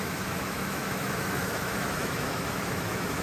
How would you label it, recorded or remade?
remade